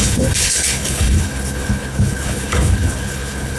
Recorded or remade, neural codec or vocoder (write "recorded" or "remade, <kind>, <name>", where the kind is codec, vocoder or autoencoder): remade, codec, HILCodec